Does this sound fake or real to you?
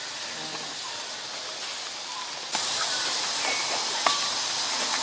real